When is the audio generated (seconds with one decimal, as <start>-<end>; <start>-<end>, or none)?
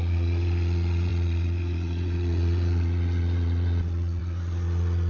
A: 0.0-5.1